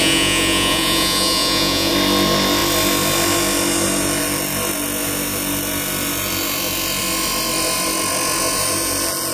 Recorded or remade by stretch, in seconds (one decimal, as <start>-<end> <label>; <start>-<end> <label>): 0.0-1.9 remade; 1.9-9.3 recorded